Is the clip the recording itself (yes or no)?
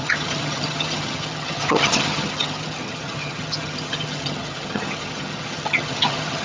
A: no